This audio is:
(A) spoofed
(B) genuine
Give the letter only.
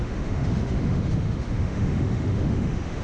A